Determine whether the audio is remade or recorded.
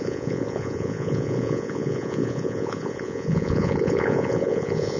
remade